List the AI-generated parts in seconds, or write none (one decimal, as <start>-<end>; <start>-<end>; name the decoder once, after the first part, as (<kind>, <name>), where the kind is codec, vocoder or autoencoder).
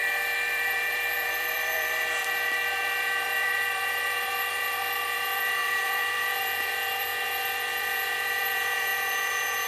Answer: 0.0-9.7 (vocoder, BigVGAN v2)